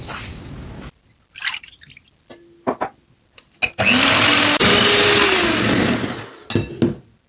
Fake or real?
real